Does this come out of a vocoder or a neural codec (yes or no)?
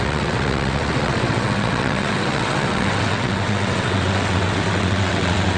yes